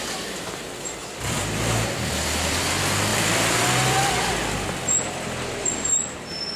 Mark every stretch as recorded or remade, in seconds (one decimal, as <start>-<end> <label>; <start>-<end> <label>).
0.0-1.0 recorded; 1.0-2.7 remade; 2.7-3.1 recorded; 3.1-4.1 remade; 4.1-6.6 recorded